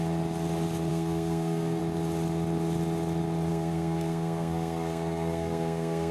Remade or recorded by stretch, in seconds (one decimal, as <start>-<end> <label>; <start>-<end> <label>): 0.0-0.9 recorded; 0.9-1.8 remade; 1.8-3.5 recorded; 3.5-6.1 remade